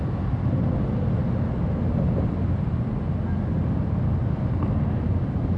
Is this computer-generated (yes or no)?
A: no